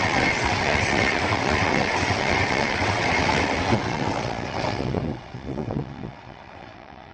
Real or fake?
fake